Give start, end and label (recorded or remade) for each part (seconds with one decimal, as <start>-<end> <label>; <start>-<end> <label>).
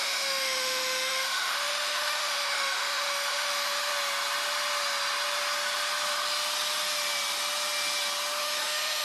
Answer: 0.0-3.9 remade; 3.9-8.4 recorded; 8.4-9.0 remade